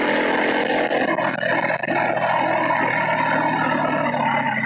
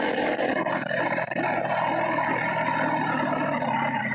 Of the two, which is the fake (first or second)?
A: second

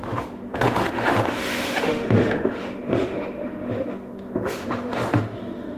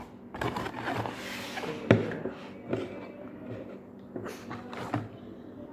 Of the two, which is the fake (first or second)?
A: first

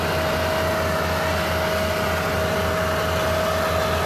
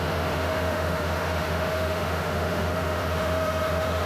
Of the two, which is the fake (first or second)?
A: second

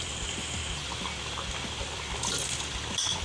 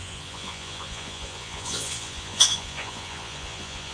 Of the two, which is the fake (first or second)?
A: second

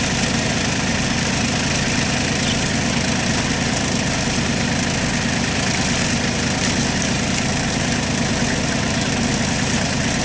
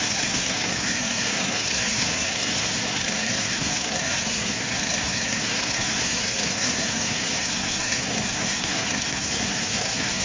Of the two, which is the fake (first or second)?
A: second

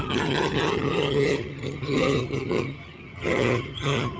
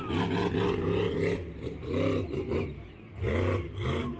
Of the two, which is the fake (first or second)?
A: first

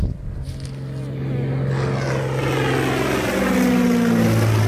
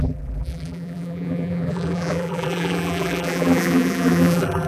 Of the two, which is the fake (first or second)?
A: second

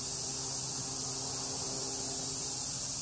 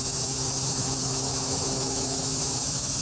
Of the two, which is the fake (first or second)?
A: second